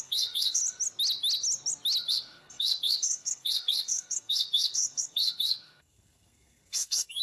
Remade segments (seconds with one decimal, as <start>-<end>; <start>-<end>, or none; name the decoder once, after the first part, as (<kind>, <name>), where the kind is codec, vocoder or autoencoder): 0.0-0.6 (codec, SNAC); 2.1-7.2